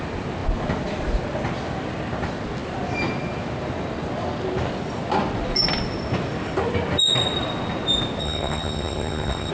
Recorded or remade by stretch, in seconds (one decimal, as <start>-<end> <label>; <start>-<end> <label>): 0.0-8.2 recorded; 8.2-9.5 remade